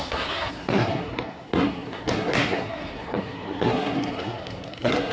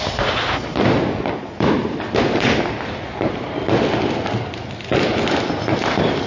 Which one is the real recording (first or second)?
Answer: second